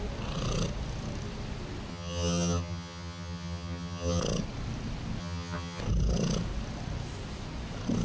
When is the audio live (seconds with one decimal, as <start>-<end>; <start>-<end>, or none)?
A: 0.0-1.9; 4.2-5.2; 5.8-8.0

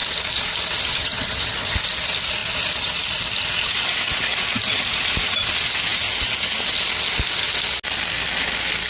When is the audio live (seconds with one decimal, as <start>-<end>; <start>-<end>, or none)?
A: 0.0-0.9; 1.7-8.9

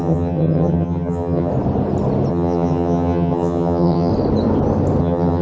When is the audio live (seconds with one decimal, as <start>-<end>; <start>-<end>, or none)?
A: 1.5-2.3; 4.1-5.0

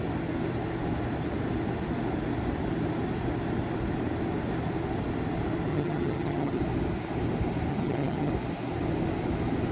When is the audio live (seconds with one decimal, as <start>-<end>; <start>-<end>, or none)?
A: 0.0-5.7; 6.6-7.7; 8.3-9.7

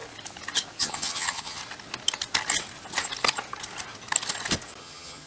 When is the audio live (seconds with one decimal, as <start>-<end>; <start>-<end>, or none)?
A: 0.0-0.8; 1.6-4.8

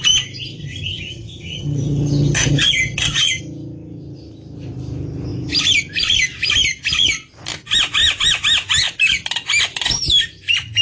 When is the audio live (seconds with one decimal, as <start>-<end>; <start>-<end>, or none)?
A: 0.0-0.6; 3.4-10.8